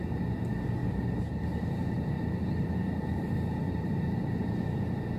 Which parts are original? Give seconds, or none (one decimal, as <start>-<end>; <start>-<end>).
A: 0.0-0.8; 3.9-5.2